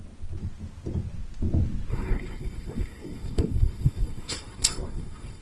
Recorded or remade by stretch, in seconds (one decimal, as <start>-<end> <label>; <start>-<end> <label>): 0.0-1.9 recorded; 1.9-5.4 remade

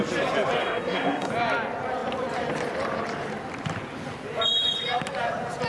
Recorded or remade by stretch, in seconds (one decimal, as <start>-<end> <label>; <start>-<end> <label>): 0.0-0.6 recorded; 0.6-1.3 remade; 1.3-5.7 recorded

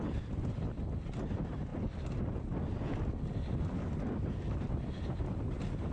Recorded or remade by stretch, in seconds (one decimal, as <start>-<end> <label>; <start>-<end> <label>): 0.0-5.9 recorded

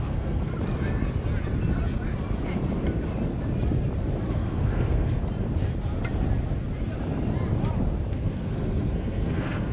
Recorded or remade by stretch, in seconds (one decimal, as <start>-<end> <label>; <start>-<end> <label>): 0.0-0.5 remade; 0.5-4.3 recorded; 4.3-5.2 remade; 5.2-8.1 recorded; 8.1-9.7 remade